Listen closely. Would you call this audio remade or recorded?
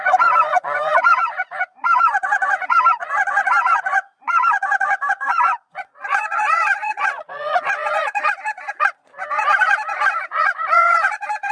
remade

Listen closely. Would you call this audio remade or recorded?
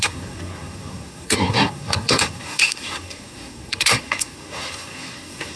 remade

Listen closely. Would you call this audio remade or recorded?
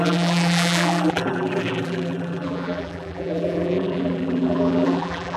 remade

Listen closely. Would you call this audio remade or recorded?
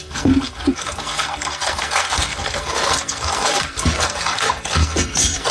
remade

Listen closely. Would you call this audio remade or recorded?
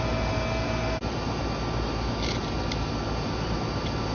remade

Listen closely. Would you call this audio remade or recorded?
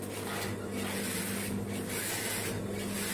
recorded